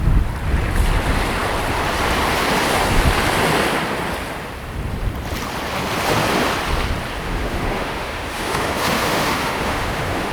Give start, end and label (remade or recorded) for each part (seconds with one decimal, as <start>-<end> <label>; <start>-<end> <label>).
0.0-7.2 recorded; 7.2-10.3 remade